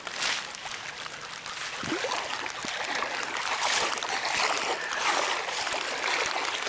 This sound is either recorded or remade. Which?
recorded